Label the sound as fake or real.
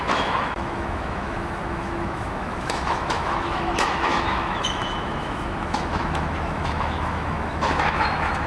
fake